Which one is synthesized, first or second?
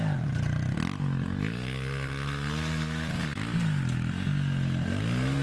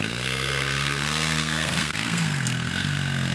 second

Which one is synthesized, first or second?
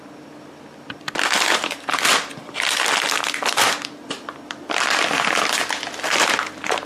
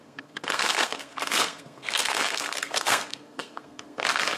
second